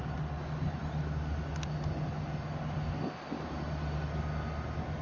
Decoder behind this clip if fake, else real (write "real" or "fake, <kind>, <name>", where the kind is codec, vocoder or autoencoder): real